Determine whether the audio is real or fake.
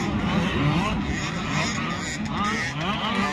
real